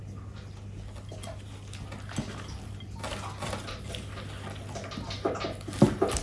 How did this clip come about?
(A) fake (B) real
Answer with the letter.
B